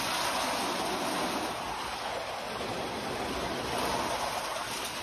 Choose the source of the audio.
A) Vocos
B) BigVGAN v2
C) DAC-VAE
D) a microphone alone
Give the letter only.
D